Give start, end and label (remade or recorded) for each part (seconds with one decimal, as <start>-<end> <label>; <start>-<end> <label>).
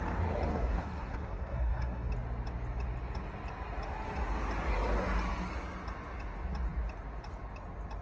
0.0-0.5 recorded; 0.5-2.1 remade; 2.1-8.0 recorded